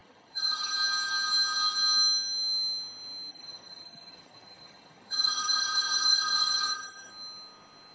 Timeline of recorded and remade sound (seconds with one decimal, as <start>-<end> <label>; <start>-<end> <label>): 0.0-0.7 remade; 0.7-3.3 recorded; 3.3-7.1 remade; 7.1-7.9 recorded